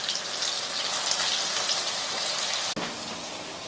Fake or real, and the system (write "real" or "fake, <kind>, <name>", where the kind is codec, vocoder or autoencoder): real